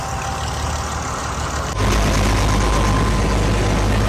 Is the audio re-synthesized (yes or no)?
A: no